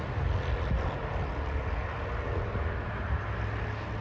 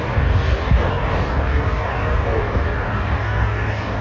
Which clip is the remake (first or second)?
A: second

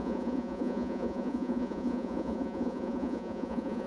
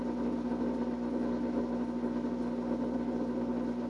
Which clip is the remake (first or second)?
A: first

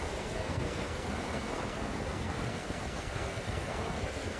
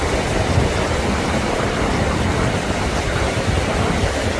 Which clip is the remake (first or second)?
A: first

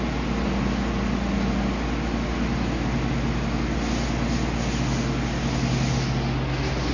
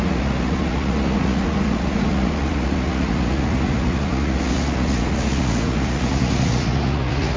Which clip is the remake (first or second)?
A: second